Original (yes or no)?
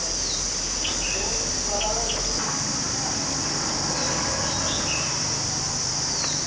yes